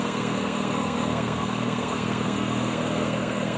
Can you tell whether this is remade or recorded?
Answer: remade